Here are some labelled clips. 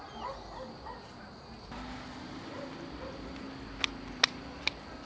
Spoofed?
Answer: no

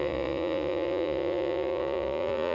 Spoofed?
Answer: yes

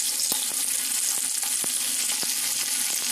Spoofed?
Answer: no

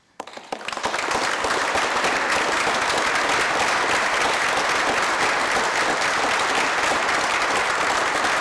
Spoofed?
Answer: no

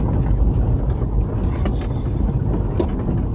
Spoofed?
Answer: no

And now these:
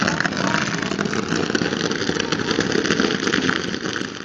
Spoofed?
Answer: no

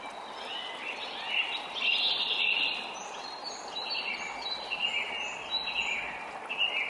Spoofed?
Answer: no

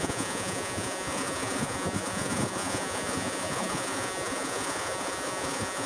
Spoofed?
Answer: yes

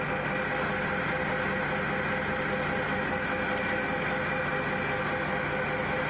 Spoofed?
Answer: no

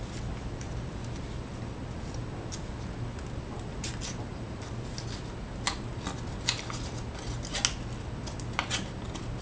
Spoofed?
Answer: no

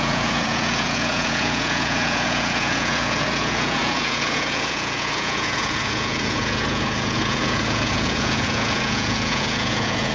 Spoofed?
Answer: yes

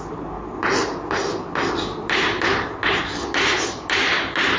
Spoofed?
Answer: no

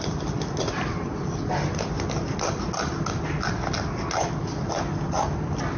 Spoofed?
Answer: no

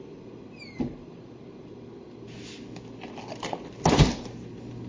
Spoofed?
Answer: no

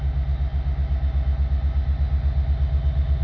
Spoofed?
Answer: no